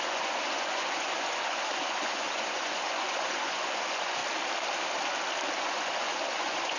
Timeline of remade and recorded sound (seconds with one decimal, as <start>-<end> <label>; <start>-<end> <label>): 0.0-4.2 remade; 4.2-5.6 recorded; 5.6-6.8 remade